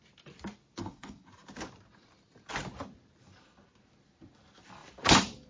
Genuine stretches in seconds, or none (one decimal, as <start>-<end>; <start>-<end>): 0.0-0.8; 1.3-5.5